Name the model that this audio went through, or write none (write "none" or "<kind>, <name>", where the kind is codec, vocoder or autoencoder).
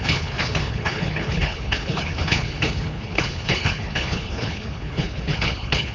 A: codec, HILCodec